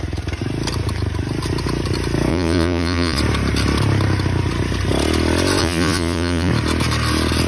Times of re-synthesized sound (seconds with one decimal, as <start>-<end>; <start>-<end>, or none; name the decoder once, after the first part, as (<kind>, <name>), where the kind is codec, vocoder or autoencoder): 2.3-3.2 (vocoder, Vocos); 5.6-6.5